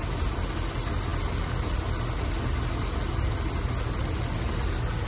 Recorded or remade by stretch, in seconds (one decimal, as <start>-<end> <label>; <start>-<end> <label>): 0.0-5.1 recorded